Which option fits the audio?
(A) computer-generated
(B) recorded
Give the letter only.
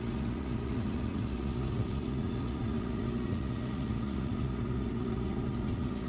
A